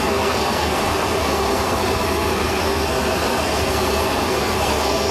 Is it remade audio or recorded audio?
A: remade